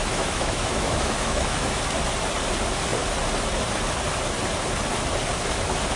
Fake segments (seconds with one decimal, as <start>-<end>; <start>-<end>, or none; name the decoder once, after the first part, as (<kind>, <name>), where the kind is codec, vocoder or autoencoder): 0.0-1.8 (autoencoder, DAC-VAE)